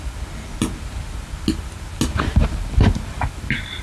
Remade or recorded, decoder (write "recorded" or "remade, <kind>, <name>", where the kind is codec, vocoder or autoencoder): recorded